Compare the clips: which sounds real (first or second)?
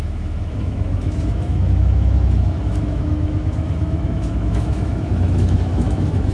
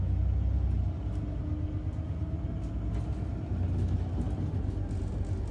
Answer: second